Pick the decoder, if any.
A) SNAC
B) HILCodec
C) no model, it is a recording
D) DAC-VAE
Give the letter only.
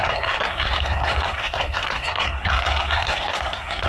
A